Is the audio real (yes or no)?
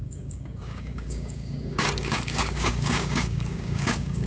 no